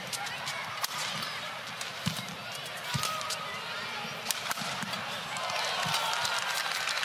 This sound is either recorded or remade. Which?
recorded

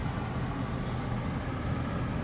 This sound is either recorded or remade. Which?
recorded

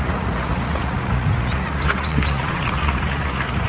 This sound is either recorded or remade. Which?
remade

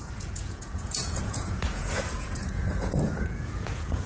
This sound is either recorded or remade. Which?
remade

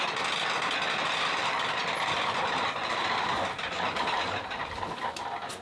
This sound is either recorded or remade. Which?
recorded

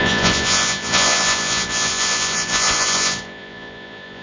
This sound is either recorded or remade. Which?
remade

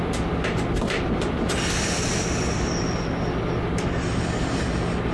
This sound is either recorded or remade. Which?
recorded